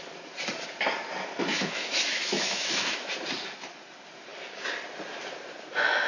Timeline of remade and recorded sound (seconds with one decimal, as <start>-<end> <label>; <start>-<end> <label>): 0.0-1.5 recorded; 1.5-3.1 remade; 3.1-6.1 recorded